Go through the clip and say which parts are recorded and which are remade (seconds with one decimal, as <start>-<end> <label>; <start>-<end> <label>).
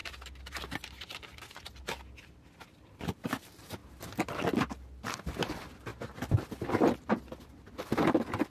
0.0-1.8 remade; 1.8-8.5 recorded